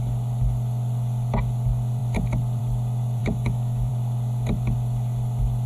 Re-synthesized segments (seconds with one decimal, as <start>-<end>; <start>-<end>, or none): 3.2-3.9